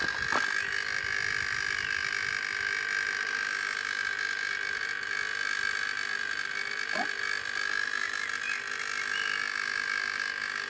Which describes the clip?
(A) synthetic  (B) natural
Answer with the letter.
B